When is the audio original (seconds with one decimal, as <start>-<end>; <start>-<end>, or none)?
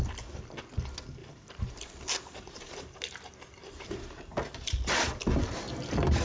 0.0-1.2; 4.9-6.2